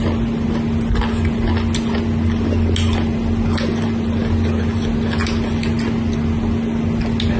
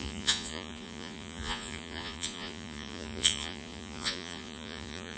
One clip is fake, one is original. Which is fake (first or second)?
second